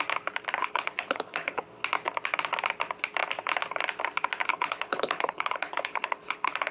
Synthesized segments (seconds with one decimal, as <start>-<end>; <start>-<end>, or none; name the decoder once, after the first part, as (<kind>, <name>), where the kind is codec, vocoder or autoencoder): 0.6-1.6 (codec, HILCodec); 4.5-6.7